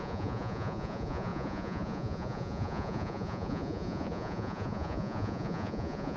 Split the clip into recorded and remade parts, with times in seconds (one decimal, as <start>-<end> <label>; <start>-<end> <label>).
0.0-6.2 remade